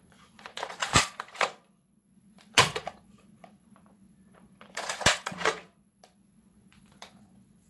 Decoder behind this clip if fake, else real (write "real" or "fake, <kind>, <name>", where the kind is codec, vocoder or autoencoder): fake, vocoder, Vocos